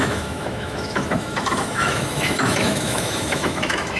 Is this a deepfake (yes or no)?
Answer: yes